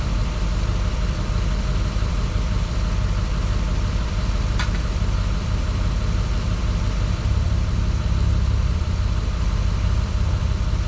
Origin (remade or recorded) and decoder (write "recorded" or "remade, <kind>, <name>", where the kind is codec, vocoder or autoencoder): remade, vocoder, BigVGAN v2